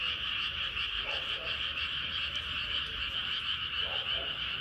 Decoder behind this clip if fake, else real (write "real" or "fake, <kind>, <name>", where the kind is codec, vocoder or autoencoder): fake, vocoder, BigVGAN v2